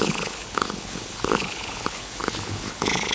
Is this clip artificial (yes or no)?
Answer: yes